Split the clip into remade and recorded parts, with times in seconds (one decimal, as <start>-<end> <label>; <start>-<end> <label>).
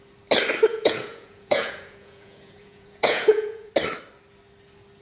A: 0.0-0.7 recorded; 0.7-3.7 remade; 3.7-5.0 recorded